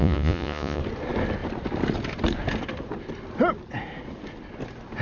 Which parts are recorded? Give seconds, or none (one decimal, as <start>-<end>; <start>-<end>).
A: 0.8-5.0